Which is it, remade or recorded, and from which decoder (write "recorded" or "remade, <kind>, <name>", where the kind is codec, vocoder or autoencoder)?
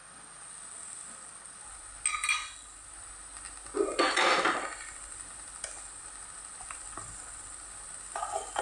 recorded